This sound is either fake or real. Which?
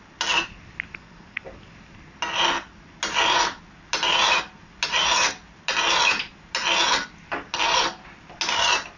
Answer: real